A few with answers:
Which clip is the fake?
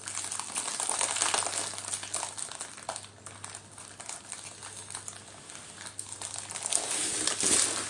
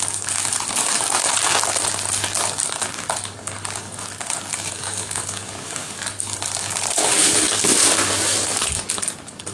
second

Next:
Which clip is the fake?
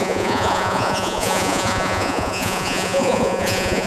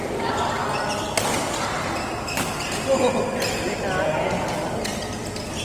first